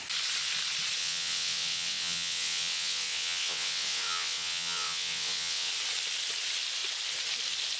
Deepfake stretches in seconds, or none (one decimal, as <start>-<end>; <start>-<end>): 1.0-5.7